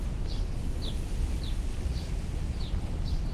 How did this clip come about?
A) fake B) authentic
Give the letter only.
B